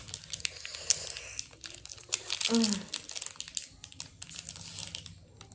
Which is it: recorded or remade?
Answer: recorded